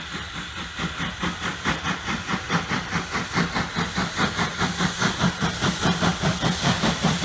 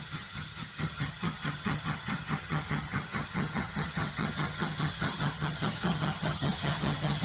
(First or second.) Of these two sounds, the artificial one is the second